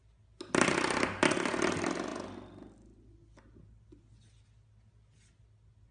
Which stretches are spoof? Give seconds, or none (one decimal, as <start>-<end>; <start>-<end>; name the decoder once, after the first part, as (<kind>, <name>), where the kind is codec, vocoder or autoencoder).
none